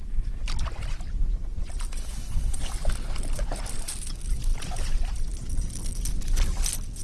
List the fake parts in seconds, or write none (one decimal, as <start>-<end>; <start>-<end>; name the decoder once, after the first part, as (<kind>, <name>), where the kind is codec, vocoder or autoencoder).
2.0-2.7 (codec, HILCodec)